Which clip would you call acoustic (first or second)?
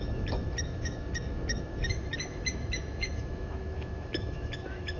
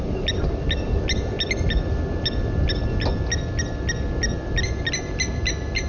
second